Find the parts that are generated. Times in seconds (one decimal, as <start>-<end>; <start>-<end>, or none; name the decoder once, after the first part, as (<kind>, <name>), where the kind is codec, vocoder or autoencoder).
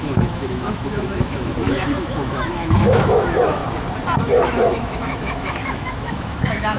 0.0-3.6 (autoencoder, DAC-VAE); 4.2-6.8